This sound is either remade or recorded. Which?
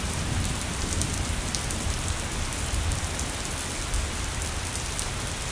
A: recorded